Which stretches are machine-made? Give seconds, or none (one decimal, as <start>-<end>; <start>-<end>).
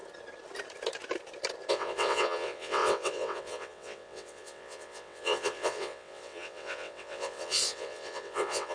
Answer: 1.7-8.7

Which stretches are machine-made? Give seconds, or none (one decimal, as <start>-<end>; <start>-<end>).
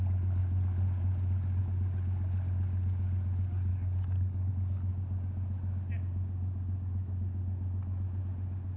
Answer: 3.7-4.5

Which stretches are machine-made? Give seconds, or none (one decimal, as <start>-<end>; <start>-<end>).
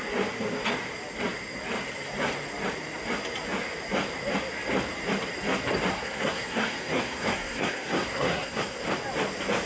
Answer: 5.9-8.8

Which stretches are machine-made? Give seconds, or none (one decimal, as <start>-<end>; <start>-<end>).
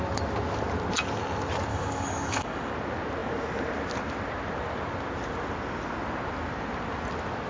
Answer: 1.7-2.7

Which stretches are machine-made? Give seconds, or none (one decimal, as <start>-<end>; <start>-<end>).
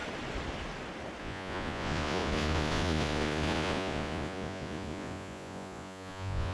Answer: 1.2-6.5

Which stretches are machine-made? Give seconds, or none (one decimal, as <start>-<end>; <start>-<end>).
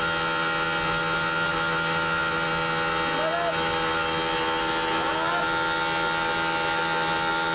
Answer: none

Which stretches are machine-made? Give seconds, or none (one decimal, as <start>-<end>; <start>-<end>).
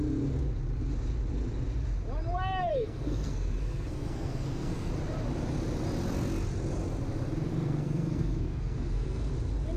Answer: 2.6-4.9; 7.5-9.3